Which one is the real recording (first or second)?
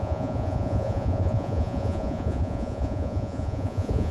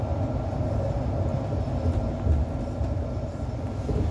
second